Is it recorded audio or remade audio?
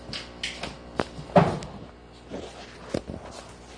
recorded